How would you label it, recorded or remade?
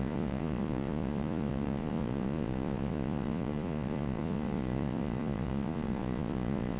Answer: remade